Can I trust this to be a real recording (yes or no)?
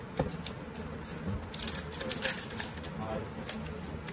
yes